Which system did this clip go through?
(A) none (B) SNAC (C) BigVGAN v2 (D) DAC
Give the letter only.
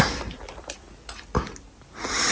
A